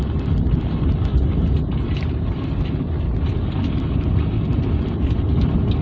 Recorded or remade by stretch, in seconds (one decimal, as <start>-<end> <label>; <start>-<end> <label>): 0.0-1.1 recorded; 1.1-2.7 remade; 2.7-5.8 recorded